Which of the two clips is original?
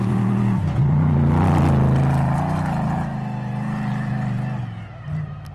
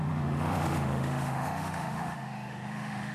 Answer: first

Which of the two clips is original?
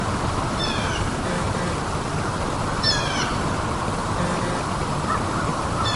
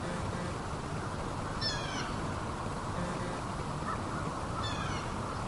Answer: second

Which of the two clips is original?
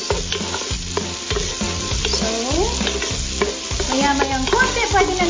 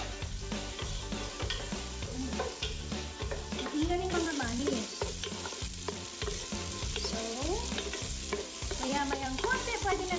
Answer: first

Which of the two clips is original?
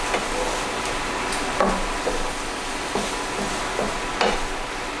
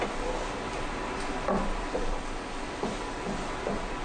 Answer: first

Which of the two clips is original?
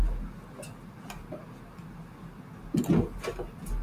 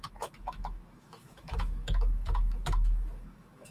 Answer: first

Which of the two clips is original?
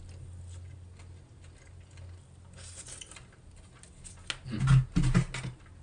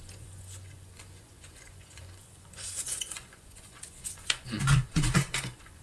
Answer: first